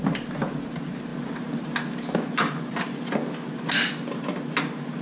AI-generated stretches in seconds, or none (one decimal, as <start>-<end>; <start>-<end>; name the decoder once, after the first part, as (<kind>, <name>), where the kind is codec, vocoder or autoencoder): none